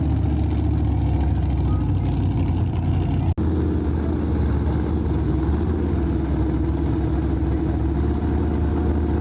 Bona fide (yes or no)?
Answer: yes